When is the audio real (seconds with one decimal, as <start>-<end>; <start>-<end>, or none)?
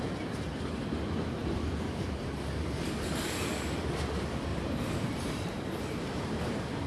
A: 0.0-4.5; 6.4-6.9